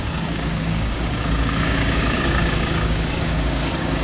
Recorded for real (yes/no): no